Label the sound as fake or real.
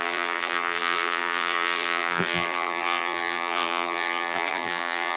fake